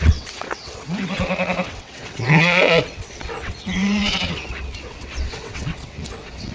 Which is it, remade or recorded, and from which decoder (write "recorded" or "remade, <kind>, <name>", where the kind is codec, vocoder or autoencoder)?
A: remade, vocoder, WaveNeXt